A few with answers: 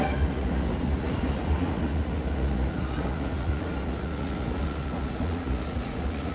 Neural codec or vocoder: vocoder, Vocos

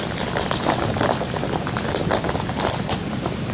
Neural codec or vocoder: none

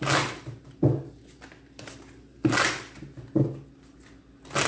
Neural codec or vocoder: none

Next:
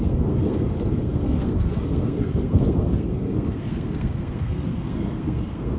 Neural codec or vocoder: codec, SNAC